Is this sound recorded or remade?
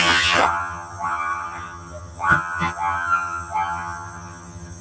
remade